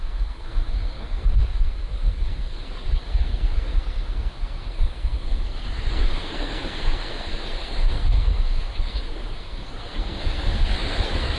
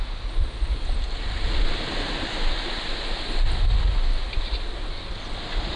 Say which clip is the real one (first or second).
second